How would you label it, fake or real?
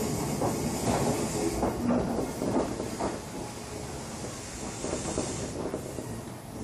real